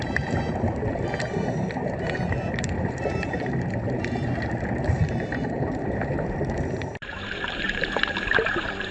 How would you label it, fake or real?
fake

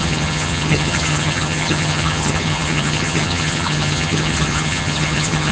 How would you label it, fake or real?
fake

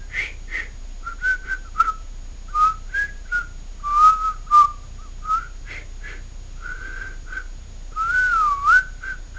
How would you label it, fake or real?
real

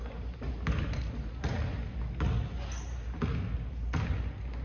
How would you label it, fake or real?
real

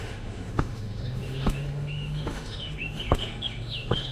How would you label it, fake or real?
fake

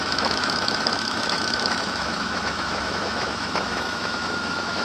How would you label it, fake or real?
fake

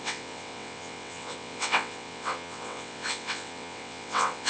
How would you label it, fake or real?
fake